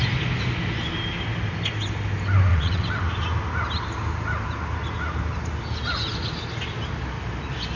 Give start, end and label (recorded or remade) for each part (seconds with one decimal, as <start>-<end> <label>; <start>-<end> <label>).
0.0-2.5 recorded; 2.5-3.0 remade; 3.0-7.8 recorded